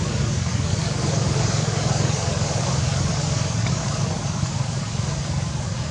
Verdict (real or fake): fake